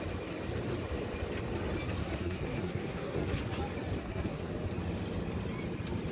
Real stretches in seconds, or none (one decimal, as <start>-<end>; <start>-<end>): 0.0-2.0; 3.4-4.0; 4.5-6.1